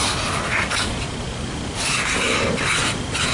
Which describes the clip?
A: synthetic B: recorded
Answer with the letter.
B